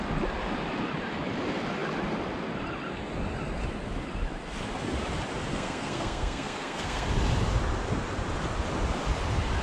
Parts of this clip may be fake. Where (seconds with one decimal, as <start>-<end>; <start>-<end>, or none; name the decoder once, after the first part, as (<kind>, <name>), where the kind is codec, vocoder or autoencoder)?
5.5-7.1 (codec, SNAC)

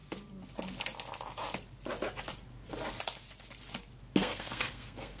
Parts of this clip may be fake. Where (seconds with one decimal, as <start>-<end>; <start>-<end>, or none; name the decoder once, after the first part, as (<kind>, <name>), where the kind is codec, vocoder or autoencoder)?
4.2-5.2 (codec, SNAC)